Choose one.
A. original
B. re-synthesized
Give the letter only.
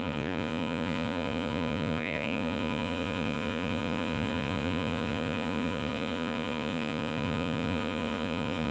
B